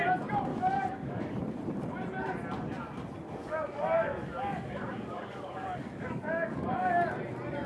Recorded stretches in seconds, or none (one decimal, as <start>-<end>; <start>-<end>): 0.0-0.5; 1.4-3.4; 7.1-7.7